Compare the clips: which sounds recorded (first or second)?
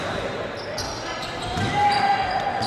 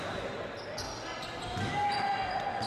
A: second